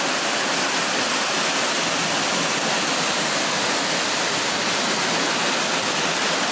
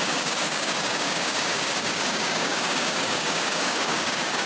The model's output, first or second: second